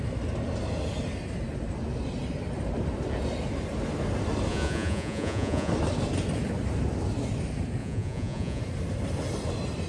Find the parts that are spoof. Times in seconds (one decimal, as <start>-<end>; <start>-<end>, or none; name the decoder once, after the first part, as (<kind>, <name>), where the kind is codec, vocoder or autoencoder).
4.5-5.7 (vocoder, Vocos); 7.8-8.6